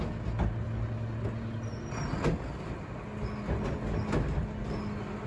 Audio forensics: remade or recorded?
recorded